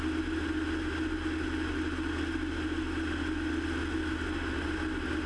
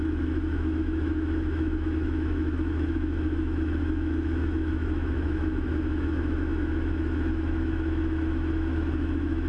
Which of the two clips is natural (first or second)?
first